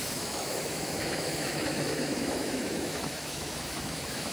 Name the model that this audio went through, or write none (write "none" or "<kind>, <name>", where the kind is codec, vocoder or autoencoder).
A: autoencoder, DAC-VAE